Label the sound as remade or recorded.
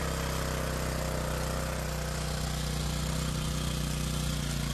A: recorded